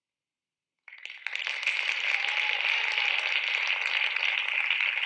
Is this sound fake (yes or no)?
no